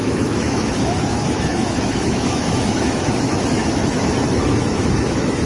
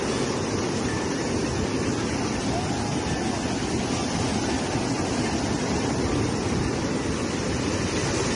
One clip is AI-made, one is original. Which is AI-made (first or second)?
first